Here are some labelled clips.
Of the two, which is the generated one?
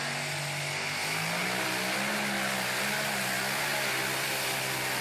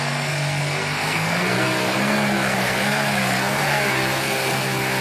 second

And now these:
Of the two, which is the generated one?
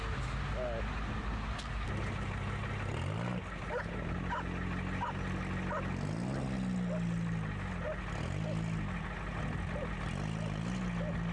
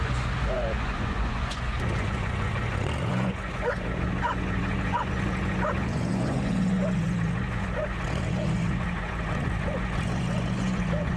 second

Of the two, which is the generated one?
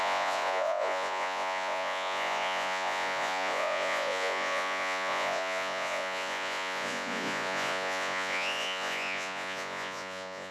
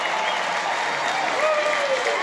first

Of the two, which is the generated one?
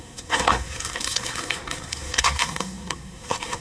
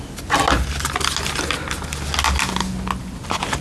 first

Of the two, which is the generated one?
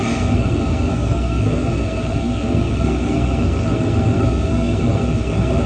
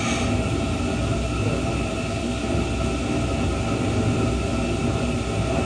first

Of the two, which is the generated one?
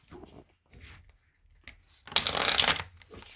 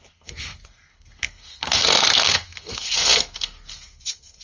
second